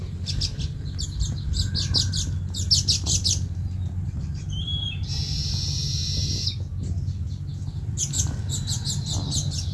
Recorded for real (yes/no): yes